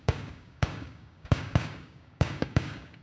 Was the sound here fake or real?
fake